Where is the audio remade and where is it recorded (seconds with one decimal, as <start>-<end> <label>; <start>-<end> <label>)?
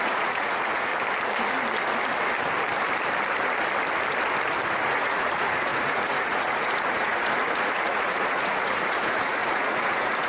0.0-0.9 remade; 0.9-4.7 recorded; 4.7-10.3 remade